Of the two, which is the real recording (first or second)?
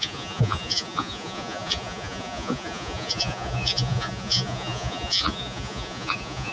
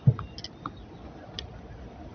second